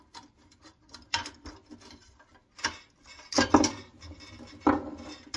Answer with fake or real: real